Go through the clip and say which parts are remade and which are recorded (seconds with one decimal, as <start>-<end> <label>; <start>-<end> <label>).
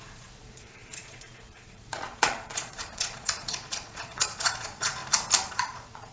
0.0-5.0 remade; 5.0-5.5 recorded; 5.5-6.1 remade